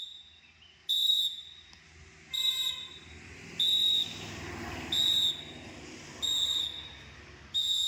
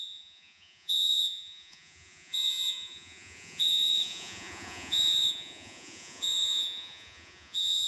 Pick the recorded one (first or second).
first